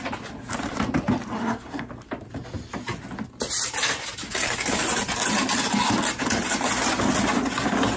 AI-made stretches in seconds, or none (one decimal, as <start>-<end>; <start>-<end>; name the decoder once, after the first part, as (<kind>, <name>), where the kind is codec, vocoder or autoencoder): 1.4-1.9 (codec, SNAC)